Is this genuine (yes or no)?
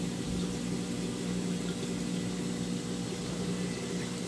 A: yes